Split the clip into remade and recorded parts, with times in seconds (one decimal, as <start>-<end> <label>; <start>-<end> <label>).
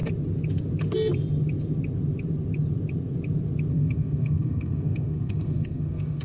0.0-3.7 recorded; 3.7-6.2 remade